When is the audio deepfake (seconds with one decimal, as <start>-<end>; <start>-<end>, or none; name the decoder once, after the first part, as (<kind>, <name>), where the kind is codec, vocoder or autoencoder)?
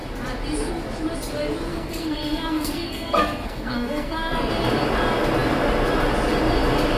1.7-4.5 (codec, SNAC)